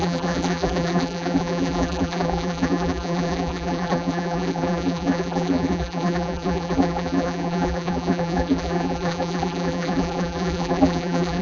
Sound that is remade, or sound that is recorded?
remade